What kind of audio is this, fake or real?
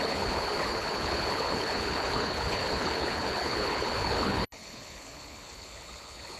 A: fake